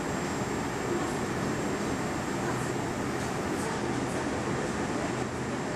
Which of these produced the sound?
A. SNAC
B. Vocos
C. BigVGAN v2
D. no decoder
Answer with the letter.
D